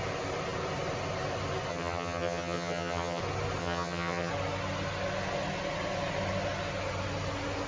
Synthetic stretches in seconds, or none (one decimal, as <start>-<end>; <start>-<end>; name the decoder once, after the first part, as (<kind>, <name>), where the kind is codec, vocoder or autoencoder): 1.7-3.2 (vocoder, HiFi-GAN); 3.6-4.3